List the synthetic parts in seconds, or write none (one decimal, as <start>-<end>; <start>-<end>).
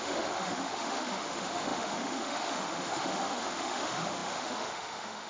0.0-5.3